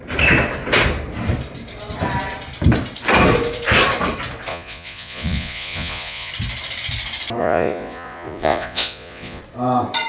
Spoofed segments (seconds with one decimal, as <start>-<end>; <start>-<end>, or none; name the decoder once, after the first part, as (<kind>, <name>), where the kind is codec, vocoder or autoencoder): 4.5-6.3 (vocoder, Vocos); 7.4-9.4